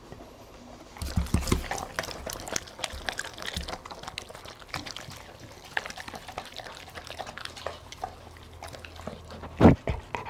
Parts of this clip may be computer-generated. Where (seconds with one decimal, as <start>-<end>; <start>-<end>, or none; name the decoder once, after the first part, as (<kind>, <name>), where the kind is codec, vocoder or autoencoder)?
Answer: none